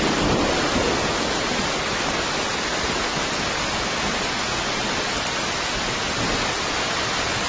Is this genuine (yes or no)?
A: yes